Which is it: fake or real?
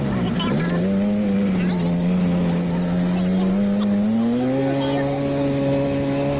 real